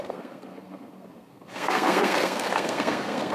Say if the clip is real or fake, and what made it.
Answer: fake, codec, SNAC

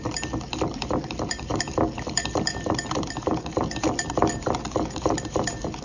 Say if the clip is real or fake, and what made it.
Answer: real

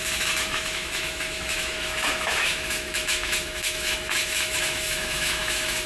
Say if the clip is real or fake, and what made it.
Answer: fake, autoencoder, DAC-VAE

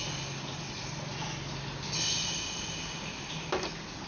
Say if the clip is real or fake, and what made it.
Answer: real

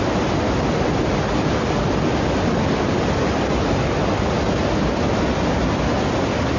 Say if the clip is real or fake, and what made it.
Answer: real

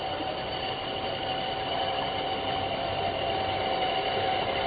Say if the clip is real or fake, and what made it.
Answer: real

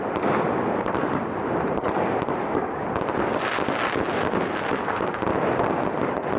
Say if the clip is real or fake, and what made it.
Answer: real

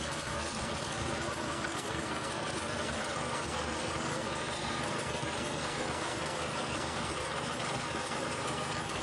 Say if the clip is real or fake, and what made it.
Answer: fake, codec, SNAC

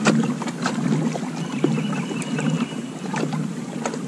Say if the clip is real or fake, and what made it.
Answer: real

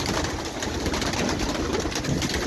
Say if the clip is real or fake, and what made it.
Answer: real